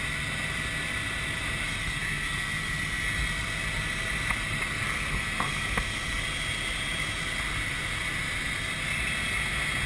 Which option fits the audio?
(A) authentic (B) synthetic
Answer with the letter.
A